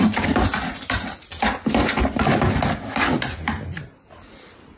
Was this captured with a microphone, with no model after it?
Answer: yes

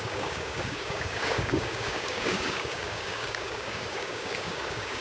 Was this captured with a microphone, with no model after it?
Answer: no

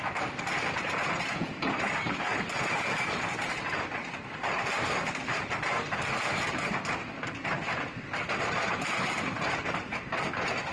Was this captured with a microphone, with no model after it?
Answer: no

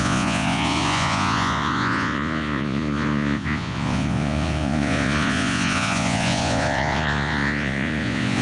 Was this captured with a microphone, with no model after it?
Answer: no